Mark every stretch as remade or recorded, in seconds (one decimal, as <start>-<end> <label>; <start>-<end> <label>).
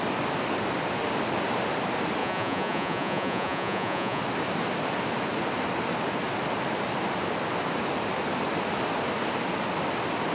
0.0-2.2 recorded; 2.2-4.2 remade; 4.2-10.3 recorded